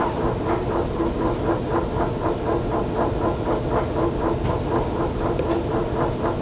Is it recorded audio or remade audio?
recorded